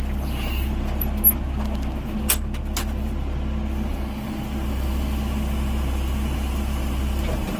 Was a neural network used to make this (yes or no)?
no